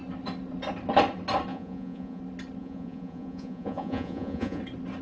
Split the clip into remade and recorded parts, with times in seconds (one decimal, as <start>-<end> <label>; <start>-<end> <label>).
0.0-1.5 recorded; 1.5-2.2 remade; 2.2-2.6 recorded; 2.6-4.6 remade; 4.6-5.0 recorded